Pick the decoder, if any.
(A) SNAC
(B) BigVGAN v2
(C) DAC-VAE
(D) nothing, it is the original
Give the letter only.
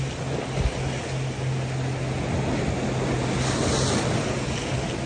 D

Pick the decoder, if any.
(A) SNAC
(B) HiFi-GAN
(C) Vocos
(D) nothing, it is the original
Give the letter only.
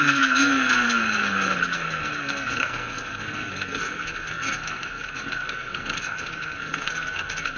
A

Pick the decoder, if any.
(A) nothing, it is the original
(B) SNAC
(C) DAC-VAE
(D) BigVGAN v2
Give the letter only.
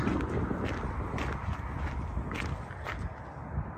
A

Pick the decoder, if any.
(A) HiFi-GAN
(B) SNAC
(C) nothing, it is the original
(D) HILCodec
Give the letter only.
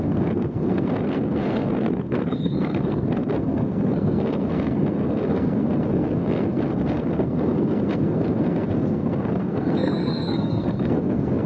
B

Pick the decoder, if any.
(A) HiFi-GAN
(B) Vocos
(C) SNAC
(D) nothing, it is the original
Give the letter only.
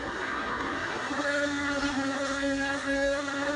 C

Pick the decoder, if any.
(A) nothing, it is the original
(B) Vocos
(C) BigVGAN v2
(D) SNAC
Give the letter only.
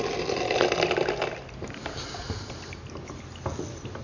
A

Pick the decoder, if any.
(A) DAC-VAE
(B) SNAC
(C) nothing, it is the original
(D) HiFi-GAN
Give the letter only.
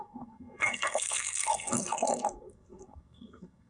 B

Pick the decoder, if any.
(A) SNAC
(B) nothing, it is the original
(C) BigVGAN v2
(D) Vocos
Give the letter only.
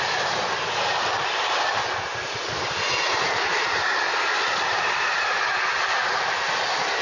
B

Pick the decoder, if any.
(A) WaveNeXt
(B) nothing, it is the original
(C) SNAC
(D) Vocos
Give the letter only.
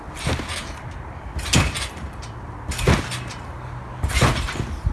B